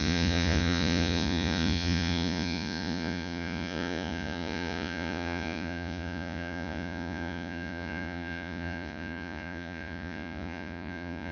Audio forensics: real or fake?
fake